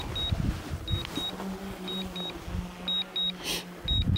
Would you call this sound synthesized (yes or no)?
no